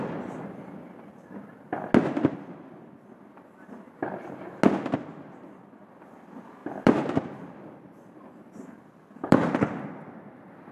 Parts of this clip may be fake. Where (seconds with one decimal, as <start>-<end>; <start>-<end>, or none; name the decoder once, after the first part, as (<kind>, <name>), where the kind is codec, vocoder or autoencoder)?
6.6-9.8 (vocoder, BigVGAN v2)